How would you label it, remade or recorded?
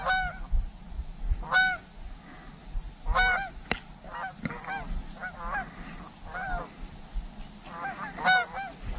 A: recorded